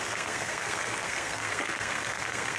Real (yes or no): no